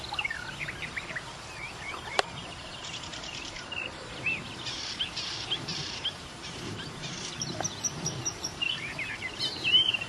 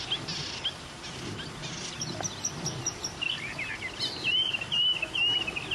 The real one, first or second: second